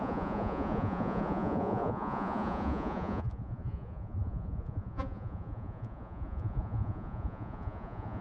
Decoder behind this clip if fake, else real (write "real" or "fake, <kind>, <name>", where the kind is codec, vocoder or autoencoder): fake, vocoder, Vocos